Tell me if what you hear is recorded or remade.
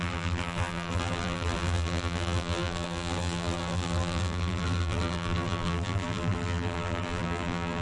remade